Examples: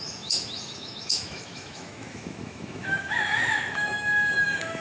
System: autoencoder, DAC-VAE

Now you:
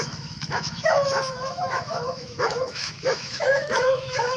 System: autoencoder, DAC-VAE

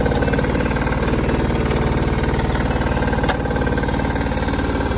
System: none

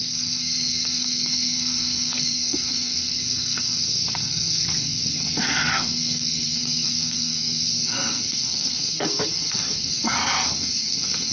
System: codec, SNAC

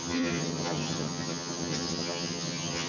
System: vocoder, HiFi-GAN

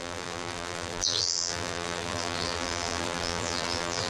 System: vocoder, BigVGAN v2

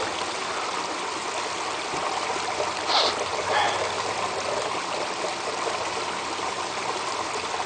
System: none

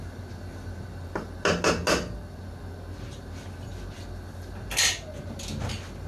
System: none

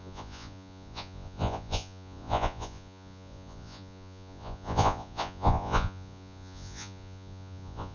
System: vocoder, Vocos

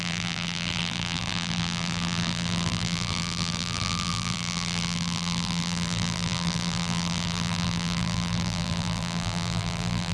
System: vocoder, BigVGAN v2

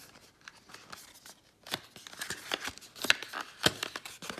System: none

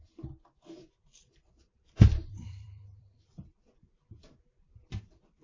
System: vocoder, BigVGAN v2